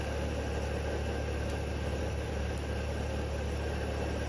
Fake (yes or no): no